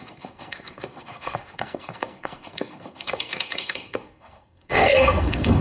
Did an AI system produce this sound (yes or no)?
yes